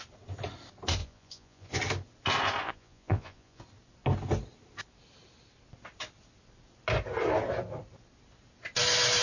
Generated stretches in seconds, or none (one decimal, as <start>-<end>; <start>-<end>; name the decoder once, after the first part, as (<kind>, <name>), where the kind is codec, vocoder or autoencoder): 1.0-1.8 (vocoder, Vocos); 2.6-3.6